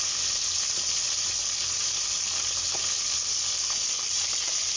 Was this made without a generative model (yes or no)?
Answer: yes